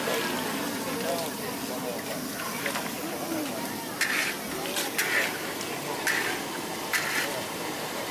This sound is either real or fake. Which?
real